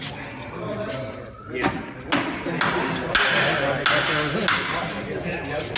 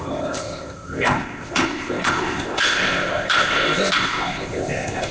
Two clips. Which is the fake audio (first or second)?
second